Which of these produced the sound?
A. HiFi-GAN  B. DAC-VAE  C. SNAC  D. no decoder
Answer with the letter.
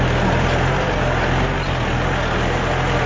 D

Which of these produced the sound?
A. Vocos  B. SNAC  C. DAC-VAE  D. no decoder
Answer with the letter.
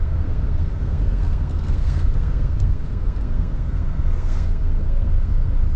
B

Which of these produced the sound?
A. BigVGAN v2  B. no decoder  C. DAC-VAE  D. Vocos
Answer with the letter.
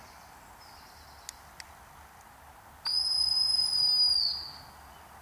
B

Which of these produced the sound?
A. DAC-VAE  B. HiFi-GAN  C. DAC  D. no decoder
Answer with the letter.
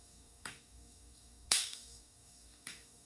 C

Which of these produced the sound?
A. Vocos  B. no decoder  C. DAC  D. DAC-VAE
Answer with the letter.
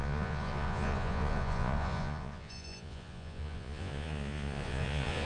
A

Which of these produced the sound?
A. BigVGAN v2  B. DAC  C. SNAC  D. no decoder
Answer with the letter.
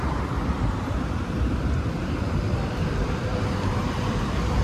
A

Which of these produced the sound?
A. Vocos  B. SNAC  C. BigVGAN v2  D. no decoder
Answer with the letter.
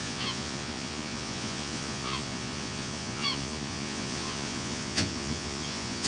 A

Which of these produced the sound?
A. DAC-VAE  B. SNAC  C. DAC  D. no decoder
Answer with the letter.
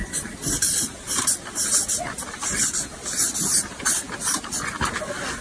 D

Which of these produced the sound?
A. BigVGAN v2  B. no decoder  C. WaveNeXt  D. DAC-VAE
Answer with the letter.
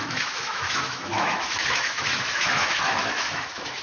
D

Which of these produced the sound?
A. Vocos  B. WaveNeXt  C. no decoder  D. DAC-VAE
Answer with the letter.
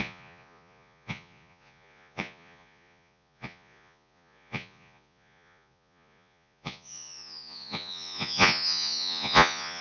A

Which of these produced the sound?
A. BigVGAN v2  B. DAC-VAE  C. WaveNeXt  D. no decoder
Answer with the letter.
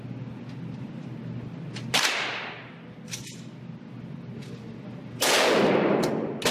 D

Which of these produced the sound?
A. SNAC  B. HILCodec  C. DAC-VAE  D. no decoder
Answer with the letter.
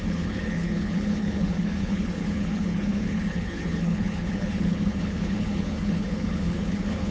B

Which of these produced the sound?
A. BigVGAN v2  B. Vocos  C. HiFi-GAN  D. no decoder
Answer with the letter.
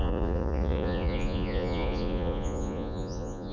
B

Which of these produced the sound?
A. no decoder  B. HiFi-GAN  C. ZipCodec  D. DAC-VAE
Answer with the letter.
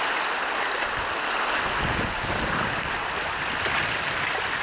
A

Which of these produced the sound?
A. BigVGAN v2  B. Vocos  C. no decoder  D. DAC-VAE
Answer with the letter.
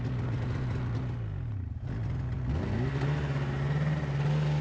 C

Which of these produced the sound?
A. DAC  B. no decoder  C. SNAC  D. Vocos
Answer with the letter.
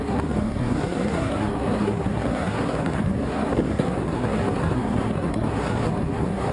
C